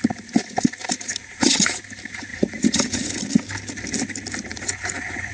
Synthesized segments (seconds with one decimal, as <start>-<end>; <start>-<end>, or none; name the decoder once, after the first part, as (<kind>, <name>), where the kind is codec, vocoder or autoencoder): 1.2-1.8 (vocoder, Vocos); 2.3-3.2; 4.5-5.3